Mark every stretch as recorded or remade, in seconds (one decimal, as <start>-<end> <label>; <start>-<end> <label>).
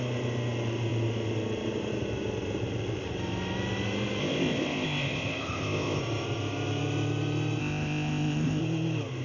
0.0-4.2 recorded; 4.2-6.0 remade; 6.0-7.6 recorded; 7.6-8.6 remade; 8.6-9.2 recorded